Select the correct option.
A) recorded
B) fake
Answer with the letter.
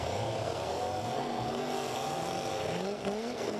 B